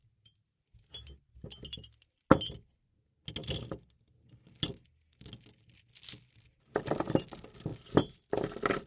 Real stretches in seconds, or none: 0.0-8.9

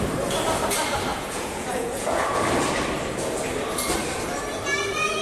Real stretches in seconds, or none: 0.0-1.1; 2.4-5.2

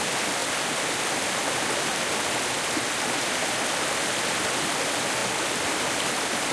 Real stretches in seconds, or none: 0.0-6.5